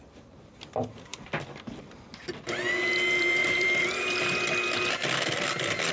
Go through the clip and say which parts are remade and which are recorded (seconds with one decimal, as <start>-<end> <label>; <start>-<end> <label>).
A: 0.0-3.4 recorded; 3.4-4.3 remade; 4.3-5.9 recorded